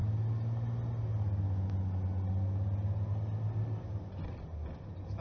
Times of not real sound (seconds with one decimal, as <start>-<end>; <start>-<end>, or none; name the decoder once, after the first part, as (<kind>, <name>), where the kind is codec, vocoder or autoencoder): none